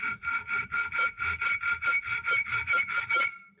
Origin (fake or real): real